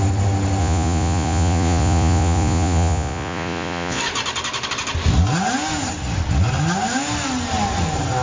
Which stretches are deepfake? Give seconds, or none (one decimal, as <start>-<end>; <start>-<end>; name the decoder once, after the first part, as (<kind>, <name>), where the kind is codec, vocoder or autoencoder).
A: 0.6-4.0 (vocoder, Vocos)